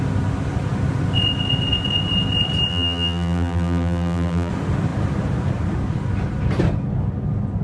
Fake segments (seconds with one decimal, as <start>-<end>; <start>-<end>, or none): 2.7-4.5